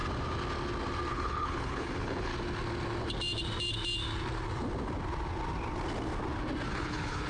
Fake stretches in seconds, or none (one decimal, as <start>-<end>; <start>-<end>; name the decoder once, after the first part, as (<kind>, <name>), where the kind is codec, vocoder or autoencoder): 1.1-2.3 (codec, HILCodec); 6.7-7.3